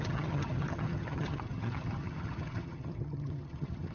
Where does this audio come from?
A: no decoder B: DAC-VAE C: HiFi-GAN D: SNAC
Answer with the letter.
C